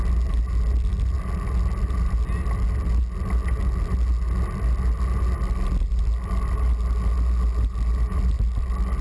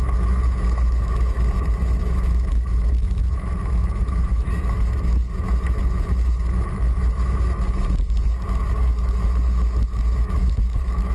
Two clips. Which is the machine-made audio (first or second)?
second